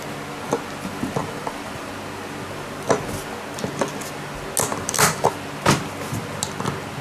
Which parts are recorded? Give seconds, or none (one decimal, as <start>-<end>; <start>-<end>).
0.0-1.2; 1.9-4.7; 5.3-7.0